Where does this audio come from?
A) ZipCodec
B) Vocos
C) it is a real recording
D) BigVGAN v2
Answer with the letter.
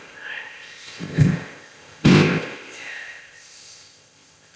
A